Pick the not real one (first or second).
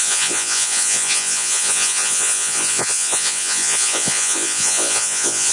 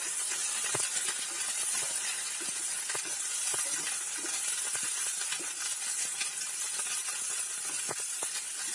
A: first